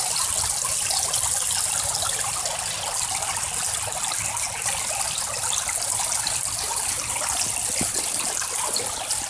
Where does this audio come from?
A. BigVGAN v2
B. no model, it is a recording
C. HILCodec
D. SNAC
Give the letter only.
B